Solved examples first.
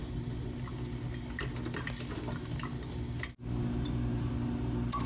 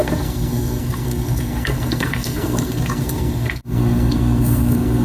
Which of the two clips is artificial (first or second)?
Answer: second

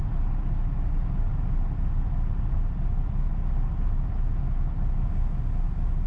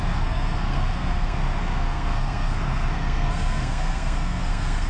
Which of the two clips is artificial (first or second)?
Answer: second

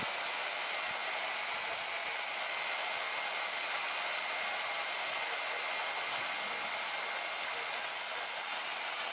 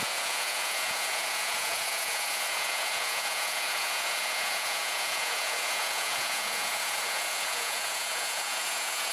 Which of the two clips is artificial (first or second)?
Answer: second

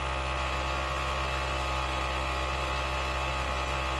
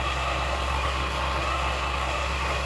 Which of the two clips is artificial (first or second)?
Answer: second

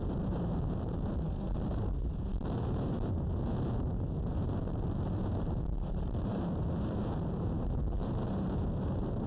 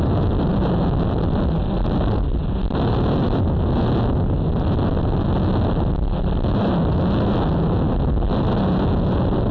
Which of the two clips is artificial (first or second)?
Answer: first